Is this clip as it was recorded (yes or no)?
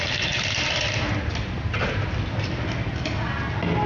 yes